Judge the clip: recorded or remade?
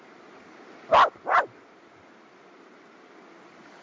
recorded